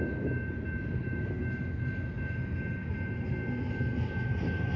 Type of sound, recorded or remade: recorded